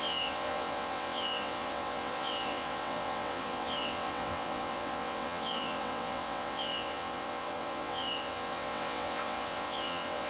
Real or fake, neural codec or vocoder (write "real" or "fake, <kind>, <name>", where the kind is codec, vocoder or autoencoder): fake, vocoder, WaveNeXt